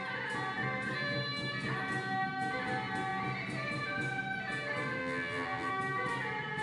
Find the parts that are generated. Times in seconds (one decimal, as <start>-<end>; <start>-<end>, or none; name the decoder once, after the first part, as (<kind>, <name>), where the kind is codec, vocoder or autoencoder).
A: 5.0-5.7 (vocoder, BigVGAN v2)